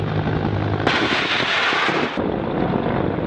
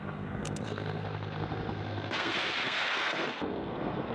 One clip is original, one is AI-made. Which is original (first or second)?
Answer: first